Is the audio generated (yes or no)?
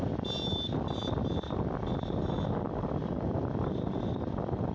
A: no